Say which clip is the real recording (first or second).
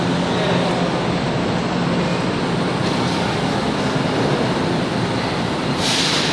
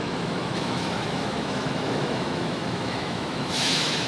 first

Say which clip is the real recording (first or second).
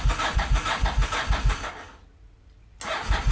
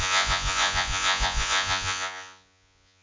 first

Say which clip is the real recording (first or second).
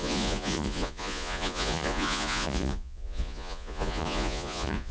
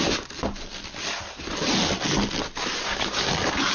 second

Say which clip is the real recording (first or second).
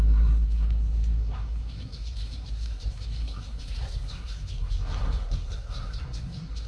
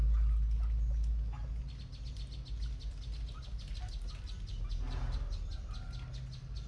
second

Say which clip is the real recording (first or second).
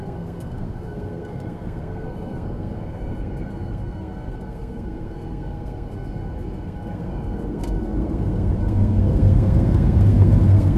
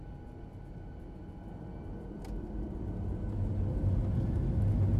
second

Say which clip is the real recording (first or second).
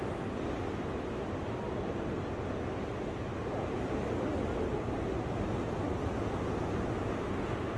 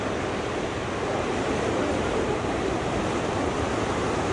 first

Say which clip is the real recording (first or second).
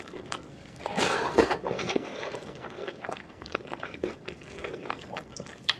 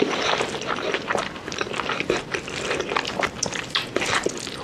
second